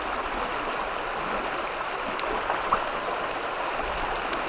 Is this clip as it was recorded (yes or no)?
yes